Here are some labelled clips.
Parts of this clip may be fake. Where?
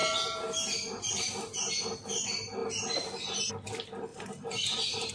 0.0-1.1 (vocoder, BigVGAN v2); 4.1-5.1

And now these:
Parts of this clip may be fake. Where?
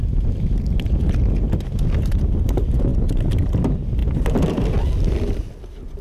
none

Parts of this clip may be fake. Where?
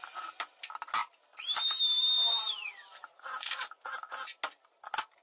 1.0-4.1 (vocoder, BigVGAN v2)